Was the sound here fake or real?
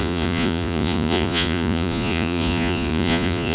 fake